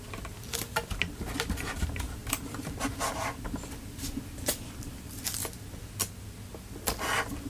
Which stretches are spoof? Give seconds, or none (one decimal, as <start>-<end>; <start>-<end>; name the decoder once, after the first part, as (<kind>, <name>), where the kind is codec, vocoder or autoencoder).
2.2-3.7 (vocoder, BigVGAN v2)